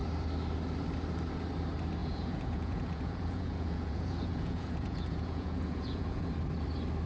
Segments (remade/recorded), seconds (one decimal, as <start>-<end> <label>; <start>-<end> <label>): 0.0-2.0 recorded; 2.0-6.3 remade; 6.3-7.1 recorded